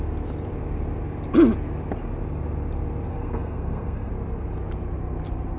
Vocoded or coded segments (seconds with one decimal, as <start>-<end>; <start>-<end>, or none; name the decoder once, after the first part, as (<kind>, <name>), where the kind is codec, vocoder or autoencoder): 3.1-4.1 (codec, SNAC)